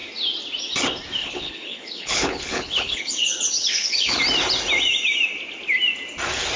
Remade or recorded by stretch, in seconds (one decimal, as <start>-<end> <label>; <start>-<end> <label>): 0.0-1.2 recorded; 1.2-4.2 remade; 4.2-6.6 recorded